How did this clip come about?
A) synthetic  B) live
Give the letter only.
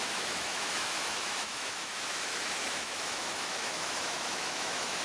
A